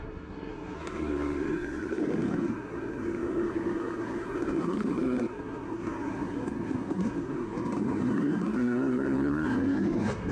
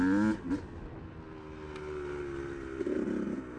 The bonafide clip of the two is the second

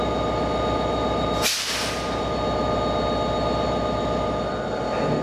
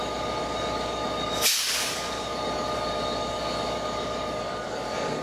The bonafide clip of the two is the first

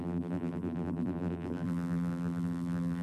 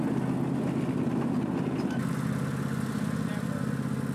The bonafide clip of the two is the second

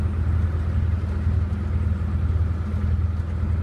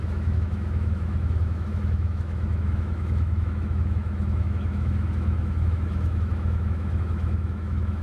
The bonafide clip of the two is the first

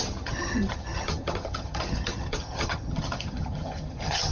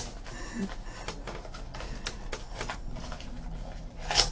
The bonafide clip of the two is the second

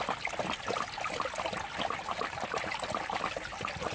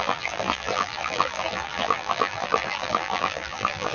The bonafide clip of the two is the first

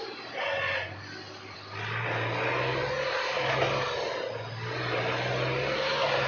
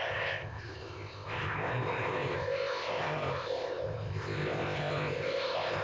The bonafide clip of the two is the first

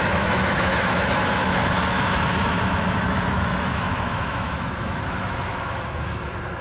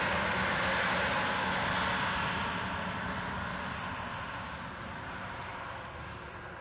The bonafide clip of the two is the second